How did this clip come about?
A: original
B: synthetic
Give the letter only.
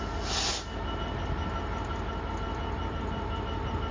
A